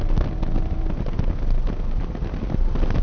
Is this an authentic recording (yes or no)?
yes